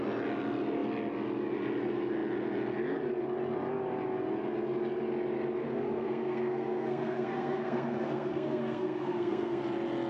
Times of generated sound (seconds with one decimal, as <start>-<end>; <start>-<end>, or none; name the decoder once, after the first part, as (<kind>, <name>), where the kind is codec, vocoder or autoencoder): 5.6-9.6 (codec, SNAC)